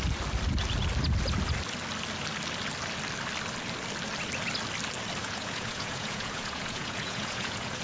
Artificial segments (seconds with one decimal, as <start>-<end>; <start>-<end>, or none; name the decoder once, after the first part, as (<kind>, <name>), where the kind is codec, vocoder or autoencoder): 5.2-7.8 (vocoder, Vocos)